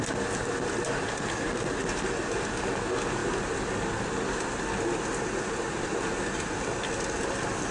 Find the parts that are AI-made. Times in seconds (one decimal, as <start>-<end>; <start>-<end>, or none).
none